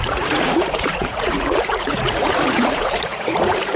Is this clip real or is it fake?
fake